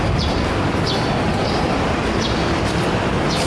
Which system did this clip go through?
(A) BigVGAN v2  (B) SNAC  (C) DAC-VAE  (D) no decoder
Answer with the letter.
A